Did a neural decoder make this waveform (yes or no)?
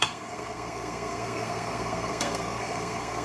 yes